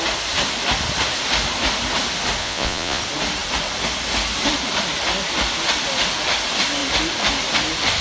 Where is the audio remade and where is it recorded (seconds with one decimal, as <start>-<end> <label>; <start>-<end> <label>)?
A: 0.0-2.4 recorded; 2.4-3.0 remade; 3.0-8.0 recorded